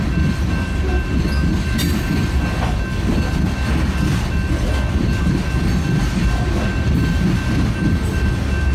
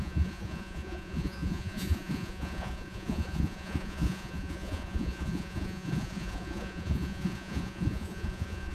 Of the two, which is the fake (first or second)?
second